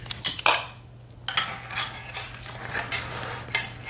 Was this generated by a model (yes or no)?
no